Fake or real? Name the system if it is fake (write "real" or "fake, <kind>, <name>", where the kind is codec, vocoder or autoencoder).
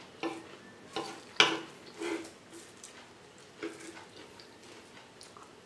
real